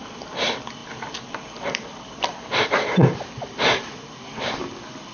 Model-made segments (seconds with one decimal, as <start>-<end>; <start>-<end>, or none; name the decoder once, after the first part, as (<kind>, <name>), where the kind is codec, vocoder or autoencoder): 0.8-3.9 (vocoder, BigVGAN v2)